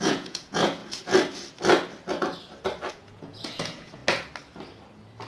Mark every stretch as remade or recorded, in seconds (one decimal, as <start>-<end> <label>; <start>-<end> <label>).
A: 0.0-0.8 remade; 0.8-2.9 recorded; 2.9-4.0 remade; 4.0-5.3 recorded